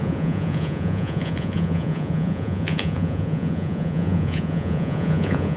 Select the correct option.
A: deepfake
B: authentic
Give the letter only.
A